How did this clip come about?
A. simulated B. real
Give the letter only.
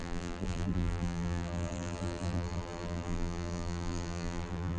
A